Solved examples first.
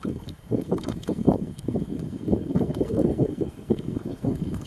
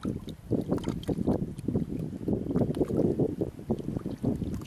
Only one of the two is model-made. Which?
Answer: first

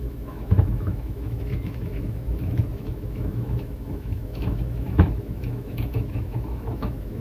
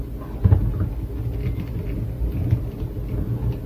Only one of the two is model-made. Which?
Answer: first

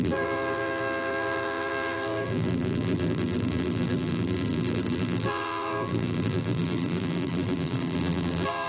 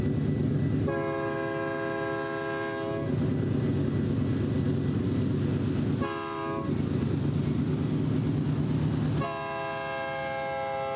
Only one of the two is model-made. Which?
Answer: first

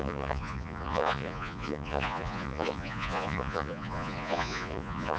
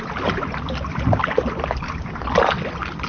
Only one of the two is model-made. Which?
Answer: first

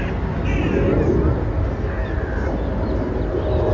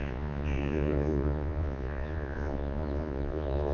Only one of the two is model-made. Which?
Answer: second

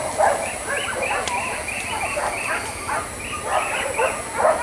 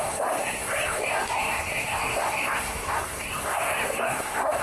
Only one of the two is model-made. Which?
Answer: second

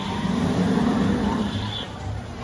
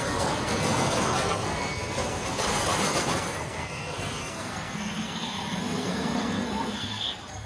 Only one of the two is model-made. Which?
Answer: second